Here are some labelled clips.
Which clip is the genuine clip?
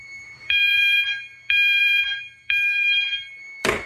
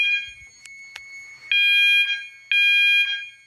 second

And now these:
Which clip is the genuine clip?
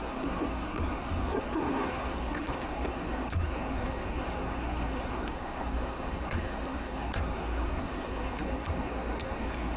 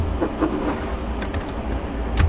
second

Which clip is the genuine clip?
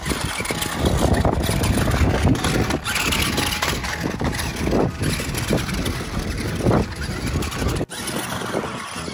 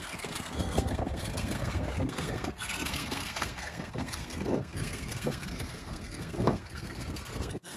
first